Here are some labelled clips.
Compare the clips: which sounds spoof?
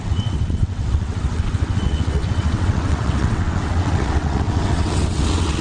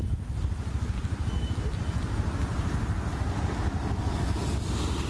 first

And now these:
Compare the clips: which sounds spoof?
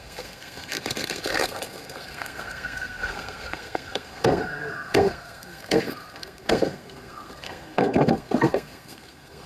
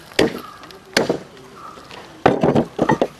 first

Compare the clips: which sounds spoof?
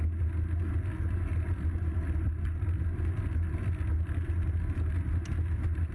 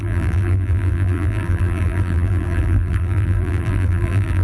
second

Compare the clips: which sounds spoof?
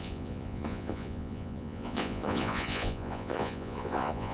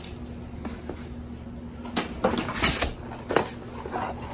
first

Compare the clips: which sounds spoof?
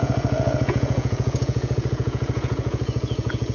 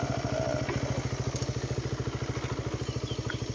first